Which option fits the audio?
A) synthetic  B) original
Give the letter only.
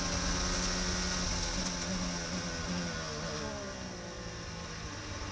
B